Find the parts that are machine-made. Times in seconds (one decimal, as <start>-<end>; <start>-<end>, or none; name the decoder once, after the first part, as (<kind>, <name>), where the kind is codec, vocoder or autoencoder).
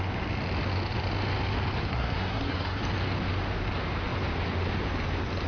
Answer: 1.9-2.8 (codec, SNAC)